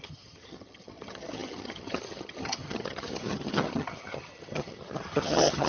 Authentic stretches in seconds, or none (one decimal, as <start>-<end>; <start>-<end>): none